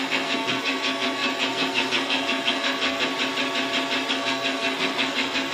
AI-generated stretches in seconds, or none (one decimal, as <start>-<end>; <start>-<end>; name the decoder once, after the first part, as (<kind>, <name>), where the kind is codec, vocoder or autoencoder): 0.0-3.1 (codec, SNAC); 4.1-5.5